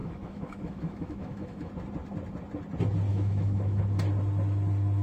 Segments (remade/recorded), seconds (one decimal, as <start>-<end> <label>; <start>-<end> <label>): 0.0-1.7 remade; 1.7-3.1 recorded; 3.1-3.8 remade; 3.8-5.0 recorded